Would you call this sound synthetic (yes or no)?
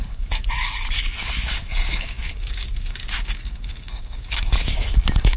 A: yes